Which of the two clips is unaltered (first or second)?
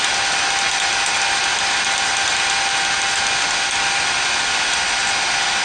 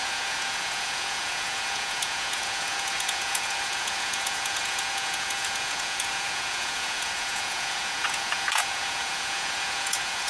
first